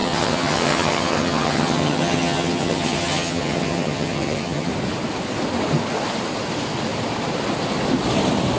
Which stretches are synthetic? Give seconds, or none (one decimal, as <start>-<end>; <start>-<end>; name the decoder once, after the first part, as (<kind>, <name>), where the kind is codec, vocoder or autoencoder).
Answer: 0.0-4.7 (vocoder, HiFi-GAN)